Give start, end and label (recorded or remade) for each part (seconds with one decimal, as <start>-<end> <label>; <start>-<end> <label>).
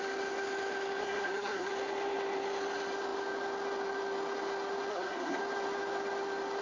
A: 0.0-1.0 recorded; 1.0-1.7 remade; 1.7-4.9 recorded; 4.9-5.4 remade; 5.4-6.6 recorded